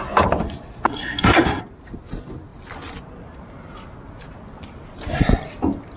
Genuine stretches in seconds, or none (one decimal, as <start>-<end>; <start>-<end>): 0.0-0.9; 1.6-6.0